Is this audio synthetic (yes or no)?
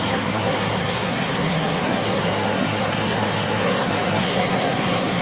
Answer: yes